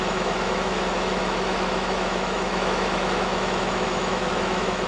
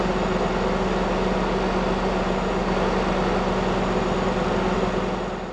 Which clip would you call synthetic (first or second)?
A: first